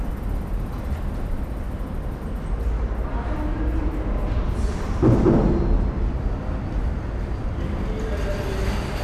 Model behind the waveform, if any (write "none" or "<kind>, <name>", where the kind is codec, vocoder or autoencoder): none